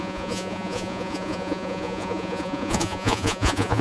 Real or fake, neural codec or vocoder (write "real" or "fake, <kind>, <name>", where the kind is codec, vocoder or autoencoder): fake, vocoder, Vocos